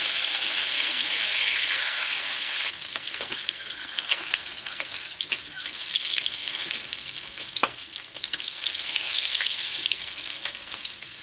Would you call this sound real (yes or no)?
no